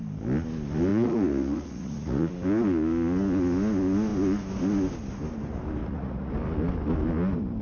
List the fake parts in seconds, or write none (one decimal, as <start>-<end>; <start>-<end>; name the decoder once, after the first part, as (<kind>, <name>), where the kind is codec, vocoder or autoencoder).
0.9-2.3 (vocoder, Vocos); 5.8-6.3